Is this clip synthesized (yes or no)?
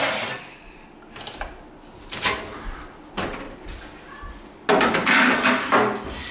no